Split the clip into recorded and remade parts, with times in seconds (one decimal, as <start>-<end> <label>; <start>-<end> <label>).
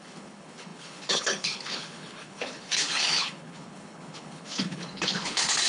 0.0-5.7 remade